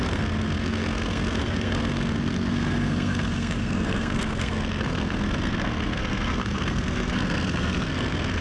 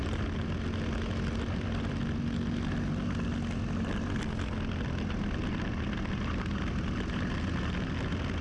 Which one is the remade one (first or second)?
first